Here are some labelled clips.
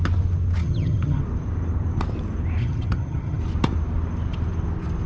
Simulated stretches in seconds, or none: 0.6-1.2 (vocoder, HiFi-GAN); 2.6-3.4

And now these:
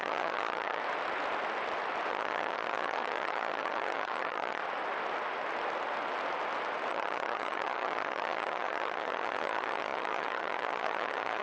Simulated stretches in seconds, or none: 0.0-0.8 (vocoder, HiFi-GAN); 2.1-4.6; 6.9-11.4